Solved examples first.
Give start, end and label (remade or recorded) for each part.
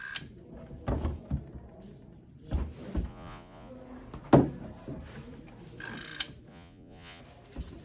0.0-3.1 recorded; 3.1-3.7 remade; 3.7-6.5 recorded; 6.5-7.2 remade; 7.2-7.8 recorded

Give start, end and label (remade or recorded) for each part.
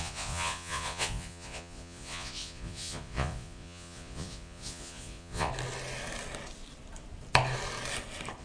0.0-5.5 remade; 5.5-8.4 recorded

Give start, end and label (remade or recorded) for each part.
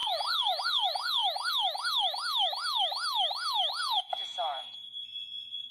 0.0-1.2 remade; 1.2-3.7 recorded; 3.7-5.7 remade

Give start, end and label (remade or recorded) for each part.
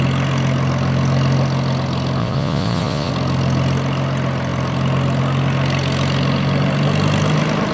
0.0-2.2 recorded; 2.2-3.1 remade; 3.1-7.7 recorded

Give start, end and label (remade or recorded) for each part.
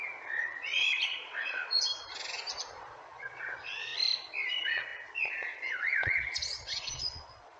0.0-1.9 remade; 1.9-2.7 recorded; 2.7-3.9 remade; 3.9-4.5 recorded; 4.5-7.6 remade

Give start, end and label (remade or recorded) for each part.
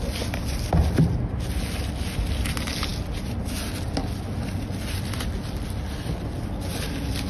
0.0-7.3 recorded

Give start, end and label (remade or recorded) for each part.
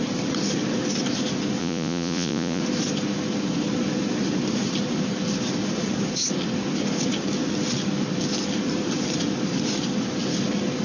0.0-1.6 recorded; 1.6-2.6 remade; 2.6-10.8 recorded